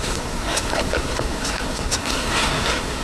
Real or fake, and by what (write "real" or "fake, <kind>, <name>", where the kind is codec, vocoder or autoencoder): fake, codec, SNAC